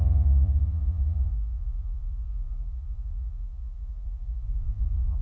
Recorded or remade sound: remade